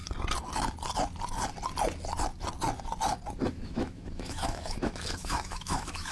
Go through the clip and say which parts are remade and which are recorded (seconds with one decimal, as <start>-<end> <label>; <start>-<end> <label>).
0.0-3.5 recorded; 3.5-6.1 remade